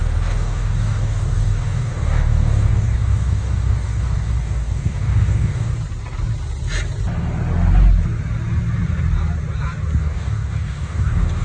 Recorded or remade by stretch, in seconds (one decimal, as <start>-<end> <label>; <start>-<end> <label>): 0.0-5.7 remade; 5.7-10.0 recorded; 10.0-11.4 remade